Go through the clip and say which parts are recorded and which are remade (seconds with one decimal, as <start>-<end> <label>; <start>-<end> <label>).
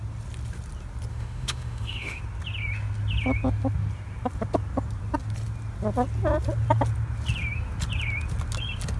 0.0-1.1 recorded; 1.1-2.2 remade; 2.2-9.0 recorded